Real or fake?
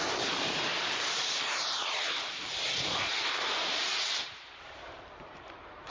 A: fake